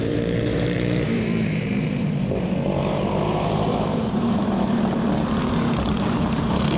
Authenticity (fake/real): fake